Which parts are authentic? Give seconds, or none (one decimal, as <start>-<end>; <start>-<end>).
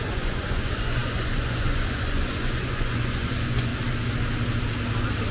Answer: 3.7-5.3